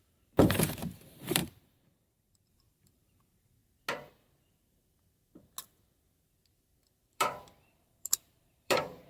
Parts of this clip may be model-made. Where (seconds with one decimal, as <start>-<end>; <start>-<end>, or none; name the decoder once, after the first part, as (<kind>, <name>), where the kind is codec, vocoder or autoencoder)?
0.0-3.6 (vocoder, BigVGAN v2); 7.1-9.1